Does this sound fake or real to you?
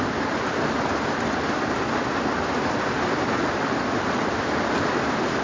fake